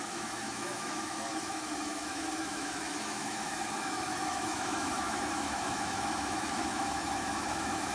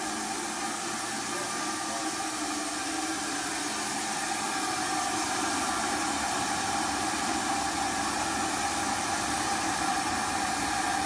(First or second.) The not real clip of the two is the first